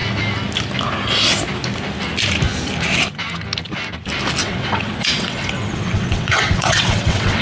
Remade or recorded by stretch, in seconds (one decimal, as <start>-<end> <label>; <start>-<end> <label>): 0.0-4.4 recorded; 4.4-7.4 remade